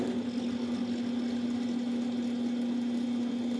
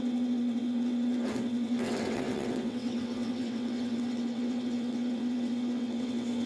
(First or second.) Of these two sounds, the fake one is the second